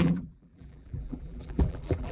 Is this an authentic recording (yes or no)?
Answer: no